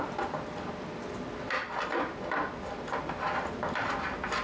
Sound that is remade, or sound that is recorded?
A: recorded